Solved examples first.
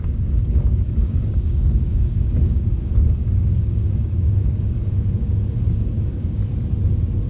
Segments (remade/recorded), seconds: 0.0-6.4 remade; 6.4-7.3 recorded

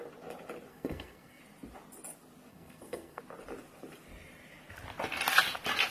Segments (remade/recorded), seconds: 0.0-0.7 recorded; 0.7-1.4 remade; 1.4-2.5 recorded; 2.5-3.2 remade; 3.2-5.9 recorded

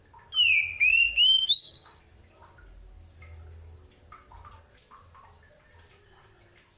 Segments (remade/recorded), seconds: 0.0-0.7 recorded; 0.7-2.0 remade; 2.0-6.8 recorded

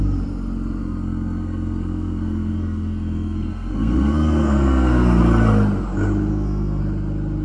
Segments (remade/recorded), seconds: 0.0-0.8 recorded; 0.8-5.2 remade; 5.2-6.3 recorded; 6.3-6.8 remade; 6.8-7.4 recorded

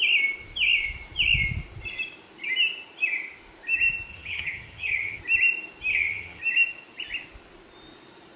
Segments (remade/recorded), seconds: 0.0-4.1 recorded; 4.1-5.2 remade; 5.2-5.9 recorded; 5.9-6.4 remade; 6.4-8.4 recorded

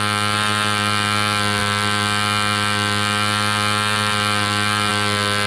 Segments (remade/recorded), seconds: 0.0-5.5 recorded

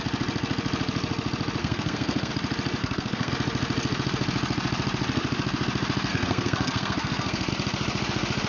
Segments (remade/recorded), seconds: 0.0-1.6 recorded; 1.6-2.3 remade; 2.3-2.8 recorded; 2.8-3.3 remade; 3.3-6.1 recorded; 6.1-7.5 remade; 7.5-8.5 recorded

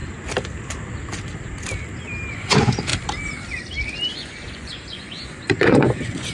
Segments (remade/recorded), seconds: 0.0-2.3 recorded; 2.3-2.9 remade; 2.9-4.1 recorded; 4.1-6.3 remade